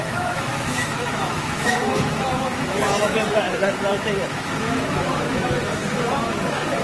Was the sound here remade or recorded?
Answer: remade